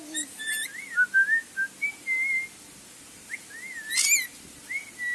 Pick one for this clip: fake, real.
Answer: real